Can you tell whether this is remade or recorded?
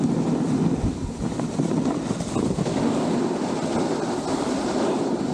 recorded